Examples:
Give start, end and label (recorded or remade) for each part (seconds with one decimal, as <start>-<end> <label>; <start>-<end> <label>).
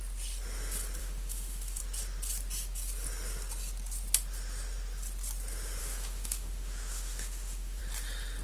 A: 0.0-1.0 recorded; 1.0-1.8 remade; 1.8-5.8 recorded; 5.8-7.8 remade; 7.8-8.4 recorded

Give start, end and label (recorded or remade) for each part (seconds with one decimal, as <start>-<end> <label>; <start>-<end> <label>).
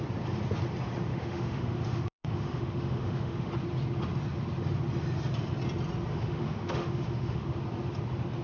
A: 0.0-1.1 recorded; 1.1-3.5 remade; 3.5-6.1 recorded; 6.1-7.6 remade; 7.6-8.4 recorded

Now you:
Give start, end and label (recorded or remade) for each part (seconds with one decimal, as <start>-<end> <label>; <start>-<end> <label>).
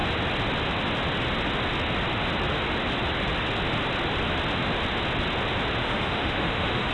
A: 0.0-5.8 recorded; 5.8-6.9 remade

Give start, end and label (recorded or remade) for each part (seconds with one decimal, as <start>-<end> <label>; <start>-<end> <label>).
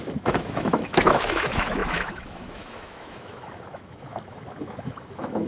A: 0.0-5.5 remade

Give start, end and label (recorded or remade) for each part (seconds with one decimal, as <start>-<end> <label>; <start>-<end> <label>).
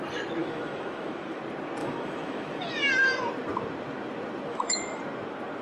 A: 0.0-0.4 recorded; 0.4-1.4 remade; 1.4-1.8 recorded; 1.8-2.9 remade; 2.9-4.5 recorded; 4.5-5.0 remade; 5.0-5.6 recorded